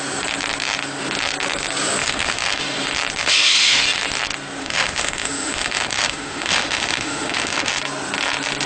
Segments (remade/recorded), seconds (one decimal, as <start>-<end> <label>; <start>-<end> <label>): 0.0-2.0 recorded; 2.0-2.6 remade; 2.6-3.2 recorded; 3.2-3.8 remade; 3.8-4.6 recorded; 4.6-7.7 remade; 7.7-8.7 recorded